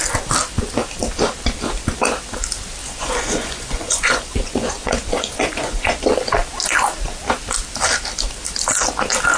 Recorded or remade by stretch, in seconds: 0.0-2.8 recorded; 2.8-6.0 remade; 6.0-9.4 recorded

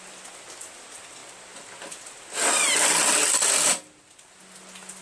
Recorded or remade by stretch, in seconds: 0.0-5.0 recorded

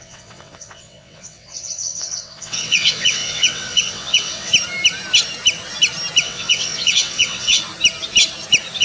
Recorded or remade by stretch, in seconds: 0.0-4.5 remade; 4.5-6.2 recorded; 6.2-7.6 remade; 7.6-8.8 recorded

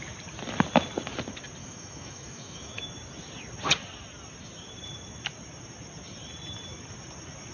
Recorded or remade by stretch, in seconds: 0.0-1.6 recorded; 1.6-2.8 remade; 2.8-7.5 recorded